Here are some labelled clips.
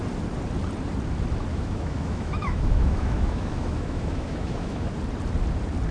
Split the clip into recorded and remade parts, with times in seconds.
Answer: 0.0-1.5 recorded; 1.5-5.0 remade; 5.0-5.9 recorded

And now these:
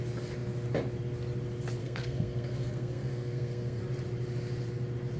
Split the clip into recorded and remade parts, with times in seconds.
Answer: 0.0-1.8 recorded; 1.8-3.8 remade; 3.8-5.2 recorded

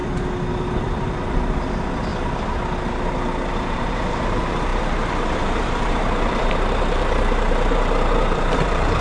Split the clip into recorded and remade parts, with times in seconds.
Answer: 0.0-0.5 recorded; 0.5-2.1 remade; 2.1-3.5 recorded; 3.5-9.0 remade

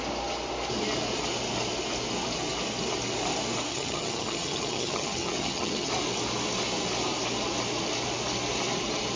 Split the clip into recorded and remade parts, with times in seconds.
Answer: 0.0-3.7 recorded; 3.7-5.9 remade; 5.9-9.2 recorded

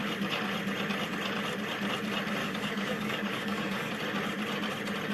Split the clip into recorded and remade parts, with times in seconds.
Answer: 0.0-2.4 recorded; 2.4-3.9 remade; 3.9-5.1 recorded

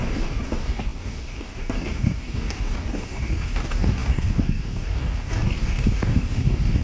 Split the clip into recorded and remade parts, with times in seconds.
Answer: 0.0-6.8 remade

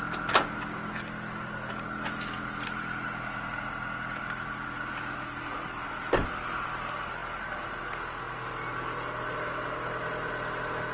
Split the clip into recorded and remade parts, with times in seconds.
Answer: 0.0-10.9 recorded